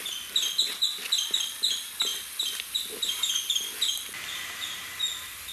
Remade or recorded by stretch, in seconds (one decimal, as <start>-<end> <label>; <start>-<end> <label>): 0.0-2.1 recorded; 2.1-5.5 remade